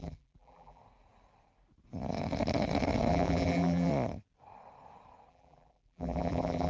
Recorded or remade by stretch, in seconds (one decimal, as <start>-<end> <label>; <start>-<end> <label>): 0.0-0.8 remade; 0.8-3.1 recorded; 3.1-3.9 remade; 3.9-5.3 recorded; 5.3-6.7 remade